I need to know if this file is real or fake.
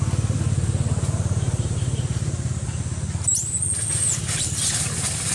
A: real